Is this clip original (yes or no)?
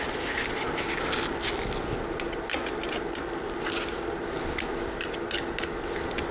yes